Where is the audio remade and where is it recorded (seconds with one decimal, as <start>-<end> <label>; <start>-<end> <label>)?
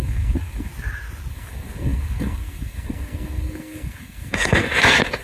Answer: 0.0-0.7 remade; 0.7-1.3 recorded; 1.3-5.2 remade